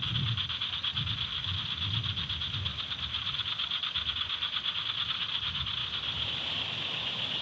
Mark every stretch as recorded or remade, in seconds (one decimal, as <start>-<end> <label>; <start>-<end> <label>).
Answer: 0.0-7.4 recorded